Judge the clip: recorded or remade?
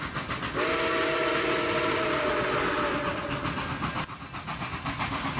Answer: recorded